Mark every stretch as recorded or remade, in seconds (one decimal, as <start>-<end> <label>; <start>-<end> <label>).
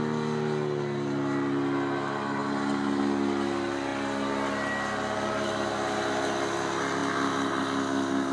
0.0-8.3 recorded